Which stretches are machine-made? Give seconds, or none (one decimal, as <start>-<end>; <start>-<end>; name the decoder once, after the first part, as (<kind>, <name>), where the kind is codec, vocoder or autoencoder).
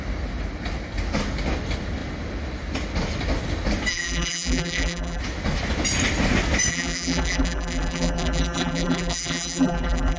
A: 3.9-5.2 (vocoder, BigVGAN v2); 6.7-10.2